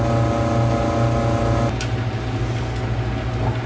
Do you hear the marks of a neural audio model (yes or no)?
no